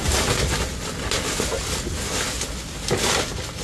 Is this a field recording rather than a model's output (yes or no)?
yes